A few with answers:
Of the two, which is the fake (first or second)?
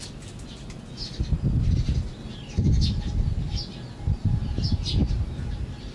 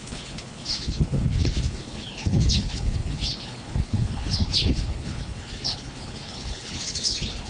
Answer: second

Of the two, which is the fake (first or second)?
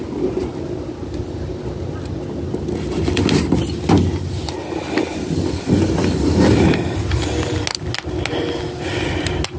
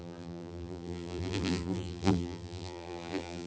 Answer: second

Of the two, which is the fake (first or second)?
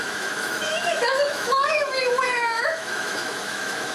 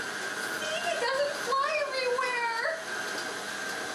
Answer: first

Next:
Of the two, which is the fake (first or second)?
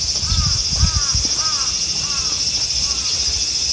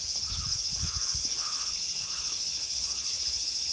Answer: second